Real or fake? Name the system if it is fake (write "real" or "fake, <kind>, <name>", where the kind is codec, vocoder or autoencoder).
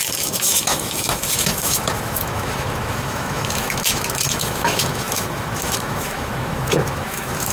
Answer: fake, autoencoder, DAC-VAE